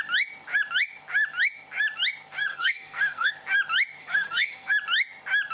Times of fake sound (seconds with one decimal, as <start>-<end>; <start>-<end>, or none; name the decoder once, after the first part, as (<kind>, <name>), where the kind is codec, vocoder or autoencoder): 2.5-3.3 (codec, SNAC); 4.0-4.7